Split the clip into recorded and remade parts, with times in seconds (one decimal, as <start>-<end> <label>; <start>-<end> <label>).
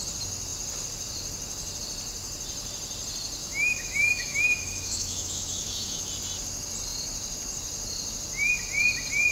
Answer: 0.0-3.4 recorded; 3.4-6.1 remade; 6.1-9.3 recorded